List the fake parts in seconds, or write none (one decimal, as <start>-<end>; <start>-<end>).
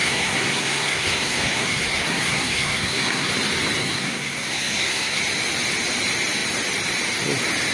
0.0-3.3; 3.8-5.2